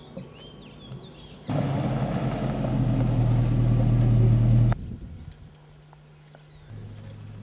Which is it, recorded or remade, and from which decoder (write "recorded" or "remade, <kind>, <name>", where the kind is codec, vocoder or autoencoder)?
recorded